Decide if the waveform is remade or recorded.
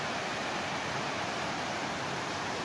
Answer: recorded